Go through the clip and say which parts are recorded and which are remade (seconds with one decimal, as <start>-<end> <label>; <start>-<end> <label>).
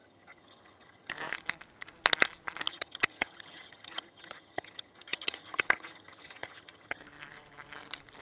0.0-1.1 remade; 1.1-2.7 recorded; 2.7-7.0 remade; 7.0-8.2 recorded